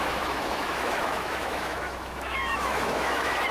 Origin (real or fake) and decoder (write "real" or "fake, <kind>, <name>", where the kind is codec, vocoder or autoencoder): fake, autoencoder, DAC-VAE